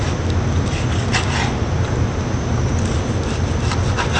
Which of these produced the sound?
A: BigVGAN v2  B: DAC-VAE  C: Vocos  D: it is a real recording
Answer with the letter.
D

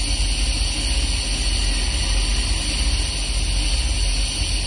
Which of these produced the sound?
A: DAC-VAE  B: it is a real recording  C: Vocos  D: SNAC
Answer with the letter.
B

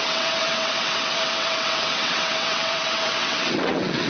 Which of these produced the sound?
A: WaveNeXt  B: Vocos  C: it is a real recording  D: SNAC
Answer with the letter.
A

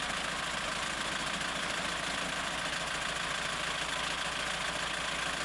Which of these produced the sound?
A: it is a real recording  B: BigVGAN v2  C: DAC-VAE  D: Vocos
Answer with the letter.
A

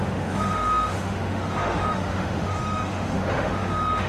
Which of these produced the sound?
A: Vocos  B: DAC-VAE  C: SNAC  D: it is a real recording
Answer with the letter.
B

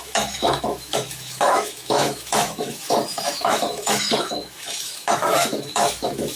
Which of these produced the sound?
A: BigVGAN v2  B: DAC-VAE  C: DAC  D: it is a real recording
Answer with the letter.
B